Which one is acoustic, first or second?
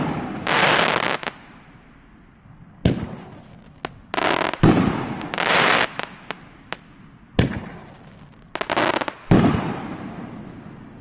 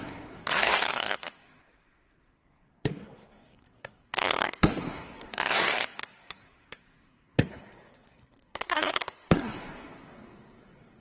first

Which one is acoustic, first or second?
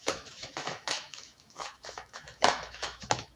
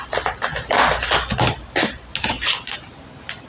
second